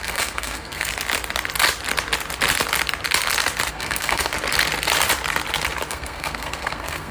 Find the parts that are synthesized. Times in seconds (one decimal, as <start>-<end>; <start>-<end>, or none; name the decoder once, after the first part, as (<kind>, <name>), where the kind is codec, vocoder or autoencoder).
0.0-0.9 (codec, SNAC); 3.7-4.3; 5.9-7.1